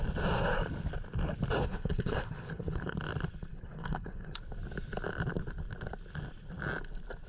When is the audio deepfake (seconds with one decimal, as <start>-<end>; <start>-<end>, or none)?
1.6-3.0; 3.5-4.4